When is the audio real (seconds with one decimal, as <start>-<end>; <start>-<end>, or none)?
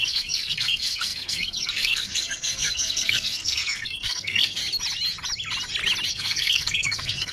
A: 4.6-6.1